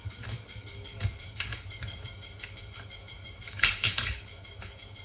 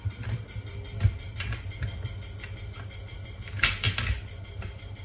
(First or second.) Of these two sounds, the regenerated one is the first